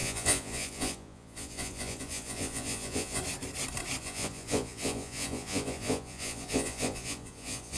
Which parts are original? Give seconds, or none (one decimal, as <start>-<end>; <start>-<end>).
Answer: 3.2-4.0